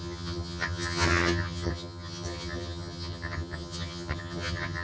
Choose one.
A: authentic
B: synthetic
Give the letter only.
B